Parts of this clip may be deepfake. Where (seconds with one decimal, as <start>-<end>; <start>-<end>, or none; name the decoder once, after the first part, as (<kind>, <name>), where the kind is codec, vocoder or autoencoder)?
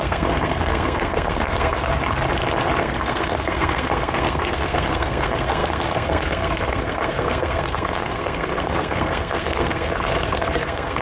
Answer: 0.0-1.9 (codec, SNAC); 2.8-11.0